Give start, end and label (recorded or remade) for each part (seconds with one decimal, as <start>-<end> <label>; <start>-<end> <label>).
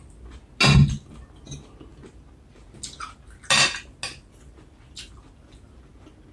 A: 0.0-6.3 recorded